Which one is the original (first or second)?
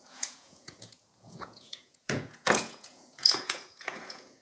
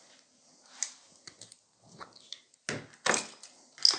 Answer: second